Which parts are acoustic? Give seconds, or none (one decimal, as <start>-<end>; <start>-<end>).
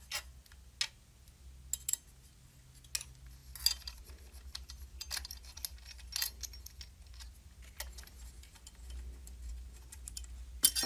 0.0-10.9